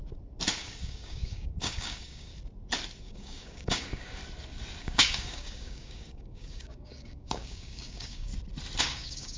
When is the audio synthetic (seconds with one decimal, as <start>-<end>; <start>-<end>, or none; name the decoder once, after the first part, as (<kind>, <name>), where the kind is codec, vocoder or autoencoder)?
0.6-2.3 (codec, DAC); 3.0-4.2; 4.8-8.3; 8.8-9.4